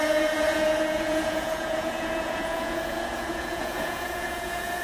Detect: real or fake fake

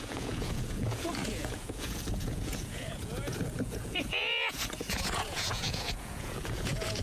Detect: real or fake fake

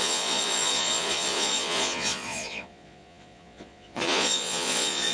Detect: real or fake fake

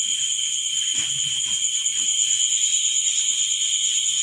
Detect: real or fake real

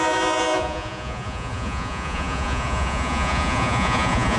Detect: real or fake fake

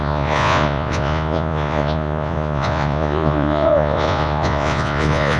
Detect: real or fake fake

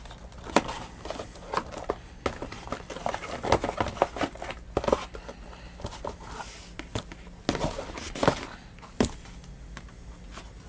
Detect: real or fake real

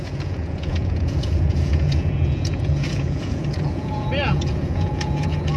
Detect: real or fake fake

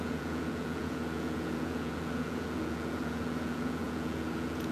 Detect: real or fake fake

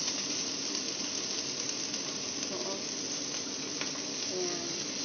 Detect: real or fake real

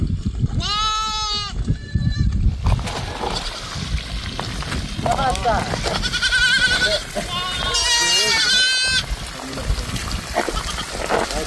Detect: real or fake real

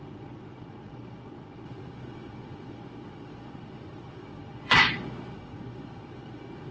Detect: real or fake fake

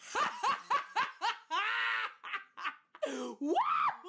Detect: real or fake real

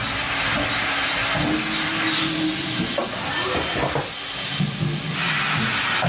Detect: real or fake real